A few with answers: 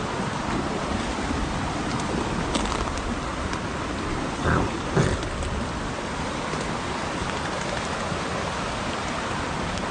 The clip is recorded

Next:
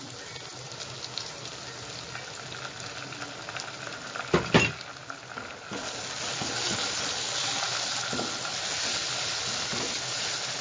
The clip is recorded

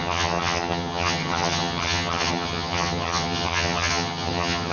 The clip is remade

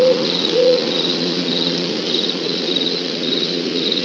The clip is remade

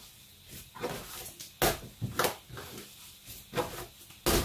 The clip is recorded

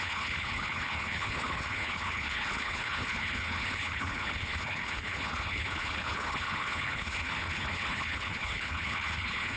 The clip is remade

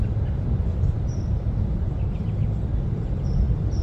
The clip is recorded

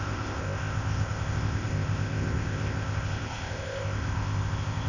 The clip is remade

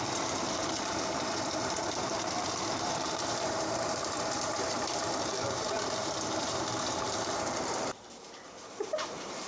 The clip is remade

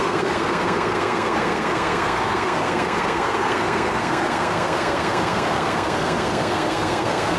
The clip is remade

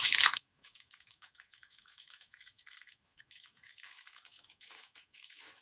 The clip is remade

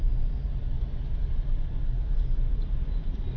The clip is recorded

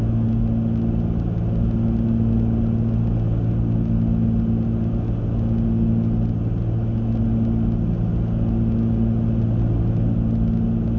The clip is recorded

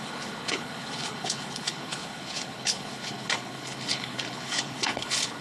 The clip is remade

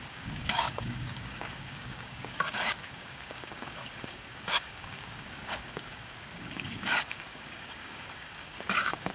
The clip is remade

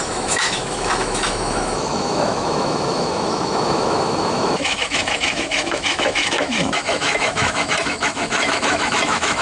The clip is remade